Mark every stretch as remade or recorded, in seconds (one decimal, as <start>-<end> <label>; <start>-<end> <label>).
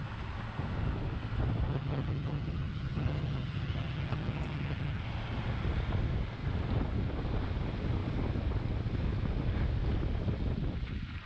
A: 0.0-1.7 recorded; 1.7-5.0 remade; 5.0-11.3 recorded